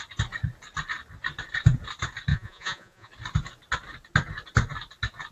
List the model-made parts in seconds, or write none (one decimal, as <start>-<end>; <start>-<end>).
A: 2.3-3.1